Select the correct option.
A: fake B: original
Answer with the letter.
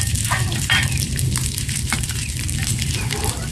A